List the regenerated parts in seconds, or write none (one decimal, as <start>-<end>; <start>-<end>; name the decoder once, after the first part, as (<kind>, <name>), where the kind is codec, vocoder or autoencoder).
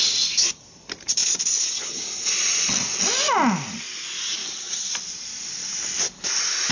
4.4-4.9 (vocoder, WaveNeXt)